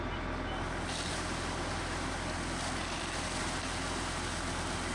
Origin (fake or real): real